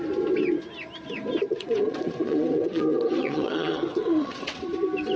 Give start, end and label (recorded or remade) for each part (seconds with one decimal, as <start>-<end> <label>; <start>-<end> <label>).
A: 0.0-1.5 recorded; 1.5-4.6 remade; 4.6-5.2 recorded